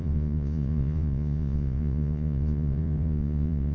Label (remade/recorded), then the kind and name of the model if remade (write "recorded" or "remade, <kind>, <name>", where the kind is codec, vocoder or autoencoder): remade, vocoder, Vocos